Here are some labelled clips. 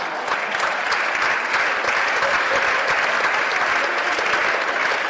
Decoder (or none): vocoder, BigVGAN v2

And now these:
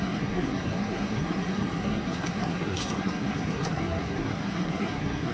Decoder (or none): codec, SNAC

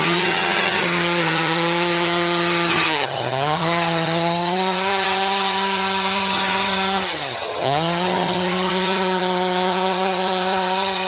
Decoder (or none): vocoder, HiFi-GAN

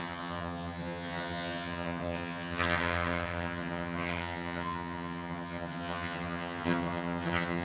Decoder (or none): vocoder, HiFi-GAN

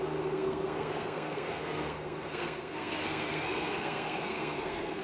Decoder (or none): codec, SNAC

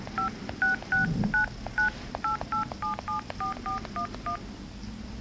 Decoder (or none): none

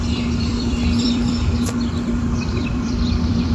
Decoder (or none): vocoder, BigVGAN v2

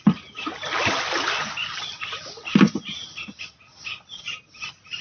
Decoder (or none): none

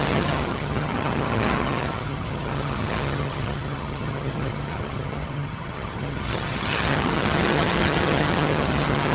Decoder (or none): vocoder, HiFi-GAN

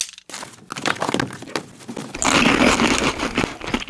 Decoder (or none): none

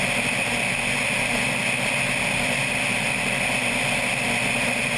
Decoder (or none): none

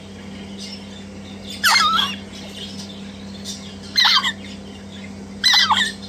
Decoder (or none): none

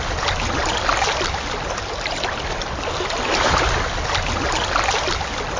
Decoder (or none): none